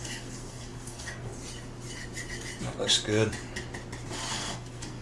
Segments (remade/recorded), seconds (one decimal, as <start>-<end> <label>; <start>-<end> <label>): 0.0-1.3 remade; 1.3-4.3 recorded; 4.3-5.0 remade